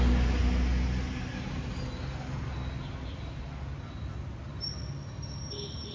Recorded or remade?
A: recorded